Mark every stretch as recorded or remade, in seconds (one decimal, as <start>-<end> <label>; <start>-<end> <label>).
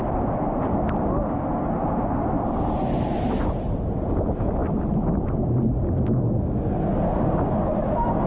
0.0-8.3 recorded